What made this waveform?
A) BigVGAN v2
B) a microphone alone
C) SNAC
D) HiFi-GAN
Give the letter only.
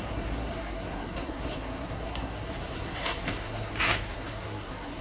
C